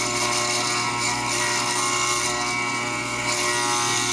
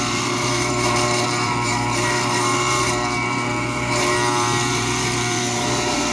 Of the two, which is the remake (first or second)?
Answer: second